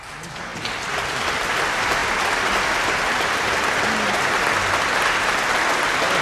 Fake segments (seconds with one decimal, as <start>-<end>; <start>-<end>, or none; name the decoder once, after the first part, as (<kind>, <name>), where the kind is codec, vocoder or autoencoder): 0.5-1.2 (vocoder, BigVGAN v2)